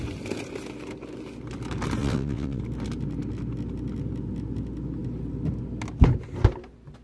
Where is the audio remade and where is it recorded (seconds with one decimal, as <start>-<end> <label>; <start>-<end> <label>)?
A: 0.0-2.0 recorded; 2.0-2.6 remade; 2.6-7.0 recorded